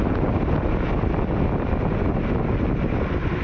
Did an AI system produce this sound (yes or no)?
no